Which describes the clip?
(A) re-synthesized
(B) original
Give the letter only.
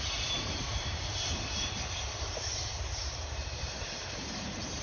A